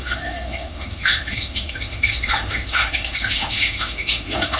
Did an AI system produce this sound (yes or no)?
yes